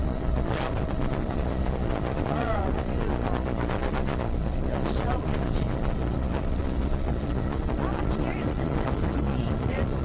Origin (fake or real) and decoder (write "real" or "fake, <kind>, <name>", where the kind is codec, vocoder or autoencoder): fake, vocoder, Vocos